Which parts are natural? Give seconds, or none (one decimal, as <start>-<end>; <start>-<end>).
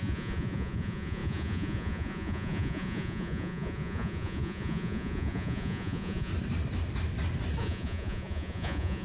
6.3-7.6